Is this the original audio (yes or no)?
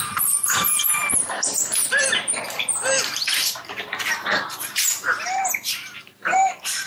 no